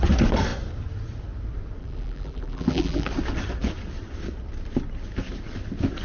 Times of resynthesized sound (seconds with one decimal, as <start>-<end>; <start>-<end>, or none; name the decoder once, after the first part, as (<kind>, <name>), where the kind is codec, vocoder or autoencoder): 1.8-3.1 (vocoder, BigVGAN v2)